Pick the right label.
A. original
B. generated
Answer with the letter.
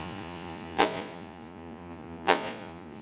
B